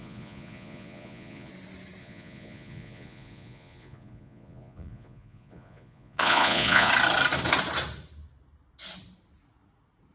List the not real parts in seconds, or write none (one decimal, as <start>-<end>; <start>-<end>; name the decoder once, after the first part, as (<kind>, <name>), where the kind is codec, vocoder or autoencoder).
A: 0.0-1.5 (vocoder, Vocos); 2.0-6.9